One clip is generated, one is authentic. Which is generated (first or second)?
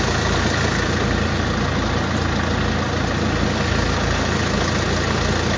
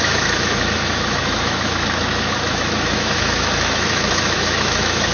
second